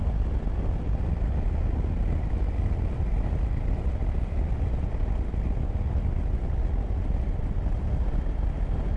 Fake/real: real